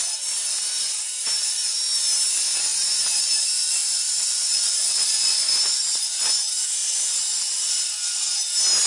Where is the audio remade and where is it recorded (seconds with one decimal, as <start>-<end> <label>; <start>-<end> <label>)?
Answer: 0.0-3.8 recorded; 3.8-5.5 remade; 5.5-8.9 recorded